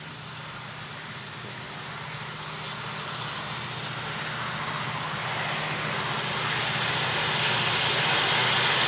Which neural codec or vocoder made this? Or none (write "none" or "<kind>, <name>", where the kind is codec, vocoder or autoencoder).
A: none